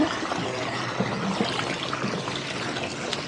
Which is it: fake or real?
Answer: real